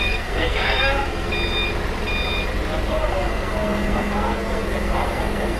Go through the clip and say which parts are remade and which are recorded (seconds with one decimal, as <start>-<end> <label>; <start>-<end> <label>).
0.0-1.3 remade; 1.3-2.9 recorded; 2.9-5.6 remade